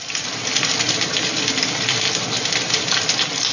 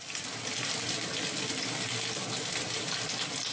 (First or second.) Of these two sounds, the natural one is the second